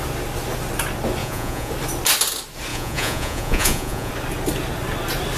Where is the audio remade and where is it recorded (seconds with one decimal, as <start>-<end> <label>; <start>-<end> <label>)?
0.0-1.2 recorded; 1.2-1.7 remade; 1.7-2.7 recorded; 2.7-4.1 remade; 4.1-5.4 recorded